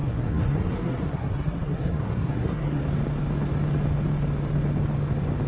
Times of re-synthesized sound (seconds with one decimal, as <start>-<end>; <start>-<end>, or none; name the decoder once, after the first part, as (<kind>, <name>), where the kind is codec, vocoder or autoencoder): 0.0-2.8 (codec, SNAC)

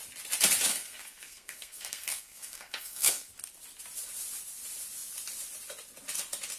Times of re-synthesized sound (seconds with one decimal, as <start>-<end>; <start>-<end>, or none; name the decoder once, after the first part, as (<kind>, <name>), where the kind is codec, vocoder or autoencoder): 0.7-3.3 (codec, SNAC)

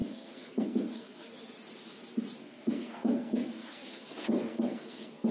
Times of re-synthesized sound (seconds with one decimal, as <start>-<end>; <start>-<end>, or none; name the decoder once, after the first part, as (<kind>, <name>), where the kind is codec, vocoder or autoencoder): 0.0-1.3 (codec, SNAC); 2.4-5.3

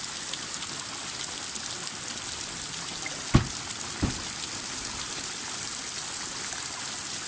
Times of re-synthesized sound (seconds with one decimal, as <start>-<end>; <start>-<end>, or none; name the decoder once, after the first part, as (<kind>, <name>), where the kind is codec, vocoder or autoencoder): none